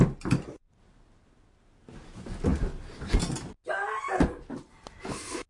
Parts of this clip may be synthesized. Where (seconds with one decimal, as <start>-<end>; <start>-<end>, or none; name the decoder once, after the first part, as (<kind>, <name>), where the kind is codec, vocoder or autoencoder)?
none